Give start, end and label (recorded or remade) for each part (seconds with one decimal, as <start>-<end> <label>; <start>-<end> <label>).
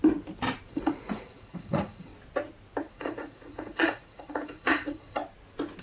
0.0-0.7 recorded; 0.7-2.1 remade; 2.1-2.9 recorded; 2.9-5.2 remade; 5.2-5.8 recorded